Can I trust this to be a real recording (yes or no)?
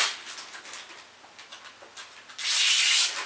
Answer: yes